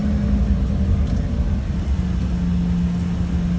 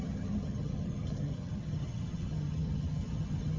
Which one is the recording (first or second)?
first